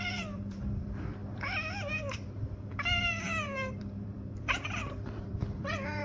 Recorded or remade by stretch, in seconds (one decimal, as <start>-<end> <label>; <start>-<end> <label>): 0.0-1.2 remade; 1.2-2.0 recorded; 2.0-6.0 remade